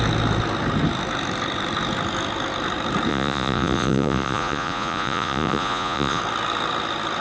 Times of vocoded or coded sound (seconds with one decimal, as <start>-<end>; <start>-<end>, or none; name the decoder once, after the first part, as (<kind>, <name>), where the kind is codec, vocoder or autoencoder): 3.1-6.2 (vocoder, Vocos)